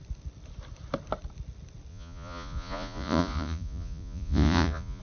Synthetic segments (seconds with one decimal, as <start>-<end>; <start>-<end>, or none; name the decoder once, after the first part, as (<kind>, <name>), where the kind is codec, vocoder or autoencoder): 1.9-5.0 (vocoder, Vocos)